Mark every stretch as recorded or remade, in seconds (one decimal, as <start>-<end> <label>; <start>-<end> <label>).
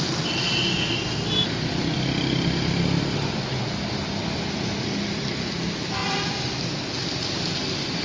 0.0-8.0 recorded